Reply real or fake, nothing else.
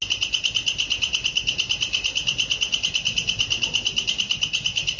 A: real